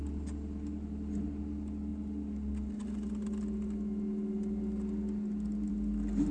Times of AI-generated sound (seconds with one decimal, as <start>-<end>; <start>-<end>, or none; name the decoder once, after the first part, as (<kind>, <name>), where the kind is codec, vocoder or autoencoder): none